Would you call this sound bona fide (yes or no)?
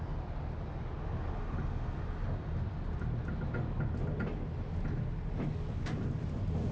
yes